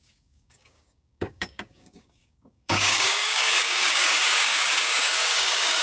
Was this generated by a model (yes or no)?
yes